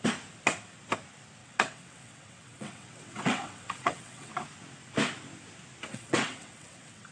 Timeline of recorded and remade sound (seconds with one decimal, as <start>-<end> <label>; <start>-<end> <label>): 0.0-1.4 recorded; 1.4-4.3 remade; 4.3-5.9 recorded; 5.9-7.1 remade